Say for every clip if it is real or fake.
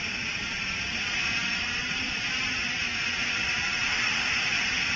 fake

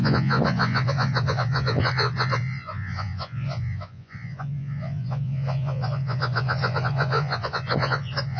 fake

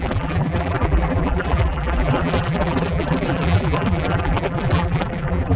fake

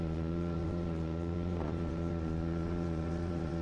fake